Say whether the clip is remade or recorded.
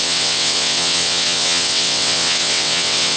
remade